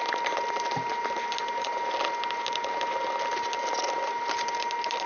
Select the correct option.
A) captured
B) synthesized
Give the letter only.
A